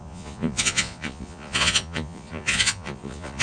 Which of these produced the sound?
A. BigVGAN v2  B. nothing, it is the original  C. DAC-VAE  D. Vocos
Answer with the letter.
D